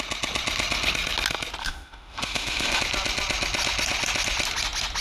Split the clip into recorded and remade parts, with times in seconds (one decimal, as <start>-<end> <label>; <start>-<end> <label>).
0.0-1.6 recorded; 1.6-2.8 remade; 2.8-5.0 recorded